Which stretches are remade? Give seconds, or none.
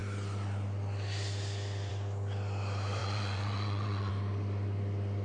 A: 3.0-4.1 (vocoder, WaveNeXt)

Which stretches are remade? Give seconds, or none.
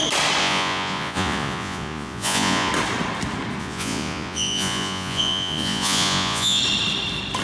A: 0.4-2.7 (vocoder, Vocos); 3.6-6.6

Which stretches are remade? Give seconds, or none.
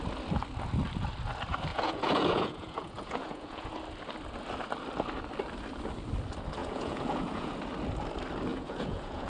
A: 1.7-3.7 (vocoder, Vocos); 6.6-7.5; 8.5-9.3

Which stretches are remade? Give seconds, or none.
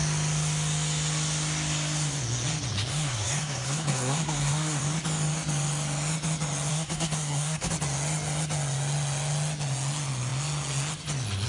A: 2.9-4.8 (codec, SNAC); 6.7-7.7